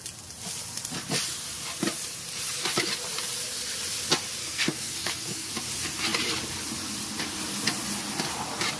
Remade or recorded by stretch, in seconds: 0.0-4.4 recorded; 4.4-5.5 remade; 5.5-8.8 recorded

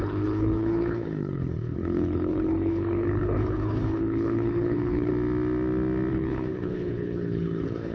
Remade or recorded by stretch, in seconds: 0.0-5.1 remade; 5.1-6.1 recorded; 6.1-7.9 remade

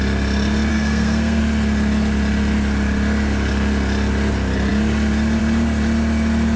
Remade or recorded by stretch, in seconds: 0.0-0.7 recorded; 0.7-1.4 remade; 1.4-6.6 recorded

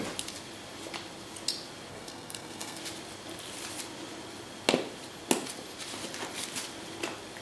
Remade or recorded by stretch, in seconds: 0.0-1.9 recorded; 1.9-2.8 remade; 2.8-7.4 recorded

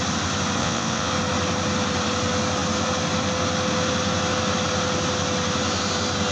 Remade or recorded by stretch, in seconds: 0.0-0.6 recorded; 0.6-1.1 remade; 1.1-6.3 recorded

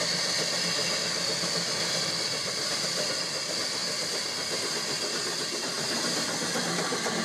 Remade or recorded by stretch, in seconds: 0.0-3.8 recorded; 3.8-4.3 remade; 4.3-7.2 recorded